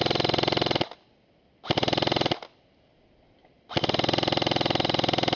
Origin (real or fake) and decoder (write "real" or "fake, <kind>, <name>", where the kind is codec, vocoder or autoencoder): real